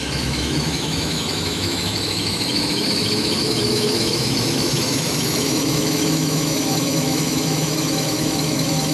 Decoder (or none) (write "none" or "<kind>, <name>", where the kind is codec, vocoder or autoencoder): autoencoder, DAC-VAE